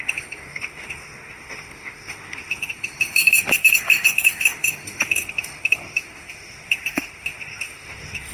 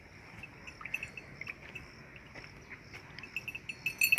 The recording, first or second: second